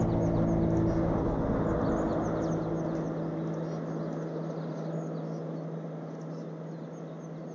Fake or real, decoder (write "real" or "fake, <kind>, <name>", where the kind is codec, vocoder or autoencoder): real